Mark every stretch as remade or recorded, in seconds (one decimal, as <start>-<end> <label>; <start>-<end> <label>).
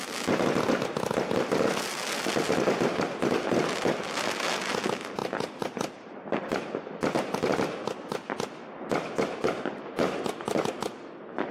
0.0-5.2 recorded; 5.2-6.6 remade; 6.6-11.5 recorded